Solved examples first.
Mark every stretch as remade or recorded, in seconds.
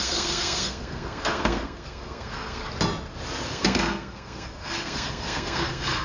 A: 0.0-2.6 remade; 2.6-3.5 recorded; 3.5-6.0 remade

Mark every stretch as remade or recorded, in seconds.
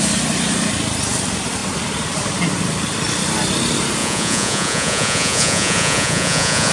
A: 0.0-4.0 recorded; 4.0-6.7 remade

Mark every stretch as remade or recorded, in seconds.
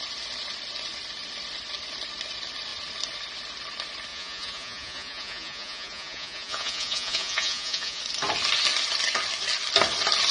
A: 0.0-4.1 recorded; 4.1-8.0 remade; 8.0-10.3 recorded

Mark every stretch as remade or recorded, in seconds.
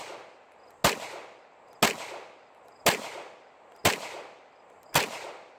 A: 0.0-5.6 recorded